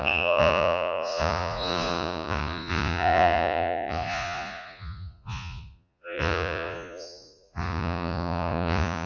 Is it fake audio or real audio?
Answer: fake